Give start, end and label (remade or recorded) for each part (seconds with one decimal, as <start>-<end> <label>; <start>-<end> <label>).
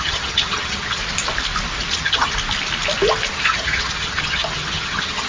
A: 0.0-1.0 remade; 1.0-1.9 recorded; 1.9-2.3 remade; 2.3-3.3 recorded; 3.3-5.3 remade